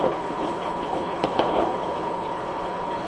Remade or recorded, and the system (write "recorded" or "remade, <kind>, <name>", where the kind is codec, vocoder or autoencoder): remade, codec, HILCodec